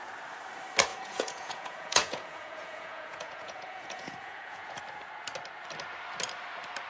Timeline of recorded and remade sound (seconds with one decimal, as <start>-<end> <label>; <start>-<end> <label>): 0.0-0.9 recorded; 0.9-4.8 remade; 4.8-6.9 recorded